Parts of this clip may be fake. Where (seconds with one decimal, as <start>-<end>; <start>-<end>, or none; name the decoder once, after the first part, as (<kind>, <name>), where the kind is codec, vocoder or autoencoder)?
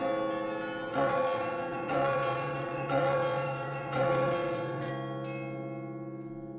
0.9-4.9 (vocoder, WaveNeXt)